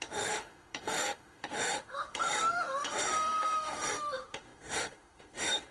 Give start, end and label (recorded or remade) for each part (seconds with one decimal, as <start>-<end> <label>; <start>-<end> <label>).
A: 0.0-5.7 remade